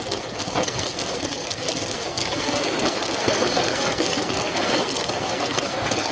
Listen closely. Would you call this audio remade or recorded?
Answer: remade